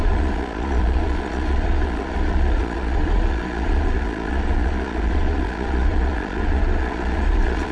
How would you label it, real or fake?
fake